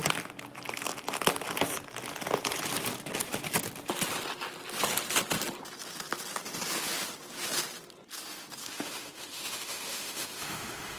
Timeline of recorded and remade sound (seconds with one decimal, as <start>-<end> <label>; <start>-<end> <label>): 0.0-8.6 recorded; 8.6-11.0 remade